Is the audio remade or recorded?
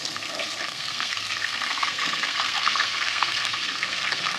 remade